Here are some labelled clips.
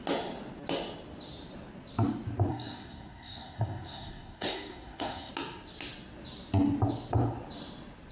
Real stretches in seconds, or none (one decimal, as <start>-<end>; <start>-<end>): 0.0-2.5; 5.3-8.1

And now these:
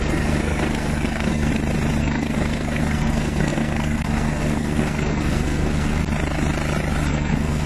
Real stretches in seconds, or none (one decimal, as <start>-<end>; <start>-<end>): 1.5-2.0; 6.0-7.1

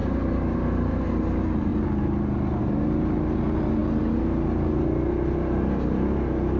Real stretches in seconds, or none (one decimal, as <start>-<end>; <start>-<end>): 0.0-6.6

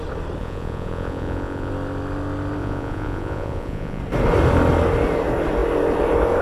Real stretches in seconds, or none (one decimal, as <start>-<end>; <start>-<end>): 0.0-0.4; 1.7-2.6; 4.0-6.4